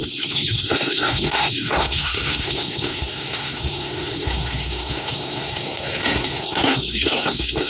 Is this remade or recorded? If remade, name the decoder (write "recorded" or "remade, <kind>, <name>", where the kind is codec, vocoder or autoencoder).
remade, codec, SNAC